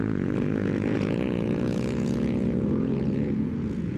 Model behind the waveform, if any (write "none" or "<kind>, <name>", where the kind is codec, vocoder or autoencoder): vocoder, Vocos